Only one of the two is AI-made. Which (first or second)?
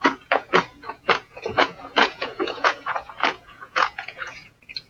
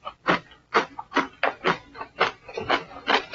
first